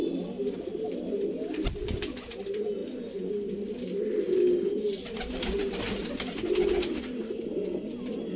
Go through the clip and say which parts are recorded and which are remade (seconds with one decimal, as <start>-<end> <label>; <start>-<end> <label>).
0.0-8.4 recorded